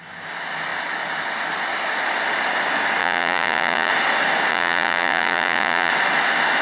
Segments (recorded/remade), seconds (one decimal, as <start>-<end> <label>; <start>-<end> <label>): 0.0-3.0 recorded; 3.0-3.9 remade; 3.9-4.5 recorded; 4.5-5.9 remade; 5.9-6.6 recorded